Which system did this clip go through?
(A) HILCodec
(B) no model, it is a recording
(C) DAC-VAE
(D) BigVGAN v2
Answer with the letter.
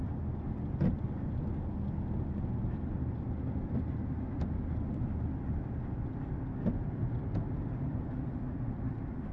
B